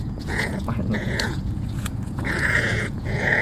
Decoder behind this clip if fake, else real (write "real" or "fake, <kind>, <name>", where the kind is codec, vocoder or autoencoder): fake, vocoder, Vocos